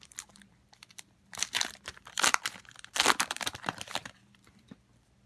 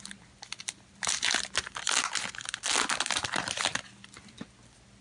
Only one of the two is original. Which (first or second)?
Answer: second